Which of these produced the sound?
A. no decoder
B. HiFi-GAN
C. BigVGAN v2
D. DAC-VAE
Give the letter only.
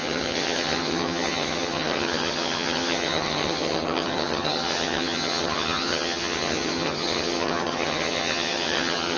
B